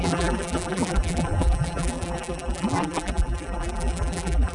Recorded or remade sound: remade